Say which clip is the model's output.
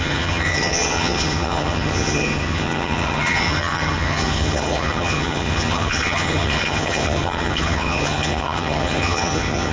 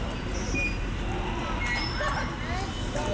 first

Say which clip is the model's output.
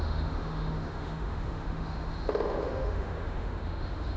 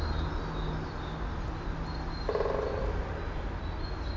first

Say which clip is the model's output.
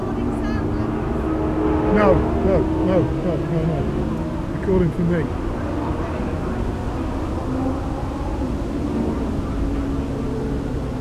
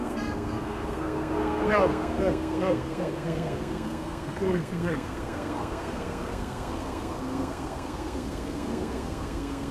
second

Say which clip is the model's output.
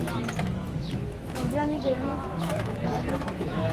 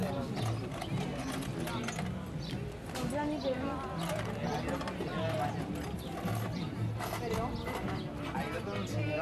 first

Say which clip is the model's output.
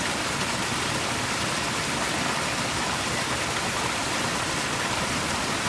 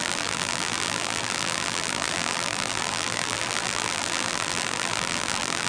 second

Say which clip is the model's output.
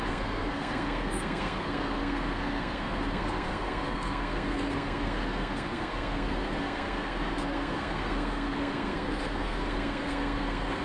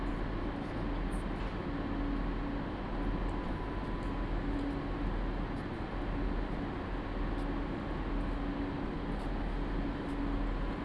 first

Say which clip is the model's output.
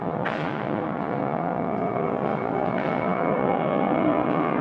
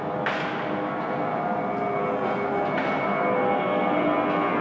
first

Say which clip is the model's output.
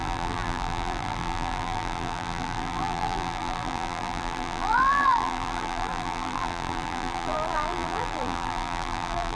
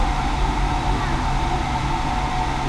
first